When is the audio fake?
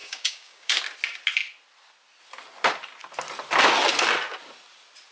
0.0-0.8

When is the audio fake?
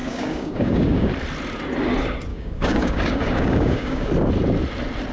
0.0-1.1; 2.3-4.1